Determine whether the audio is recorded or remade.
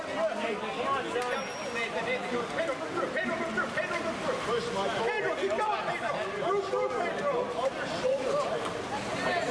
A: recorded